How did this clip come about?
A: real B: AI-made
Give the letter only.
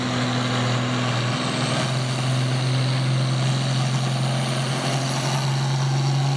A